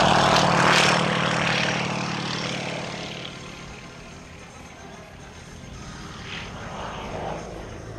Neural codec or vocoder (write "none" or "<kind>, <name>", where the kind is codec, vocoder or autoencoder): none